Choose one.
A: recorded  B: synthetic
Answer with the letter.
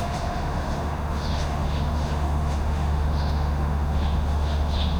B